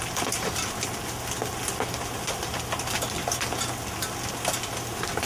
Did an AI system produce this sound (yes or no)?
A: no